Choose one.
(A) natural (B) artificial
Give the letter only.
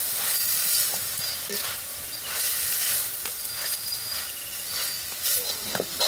A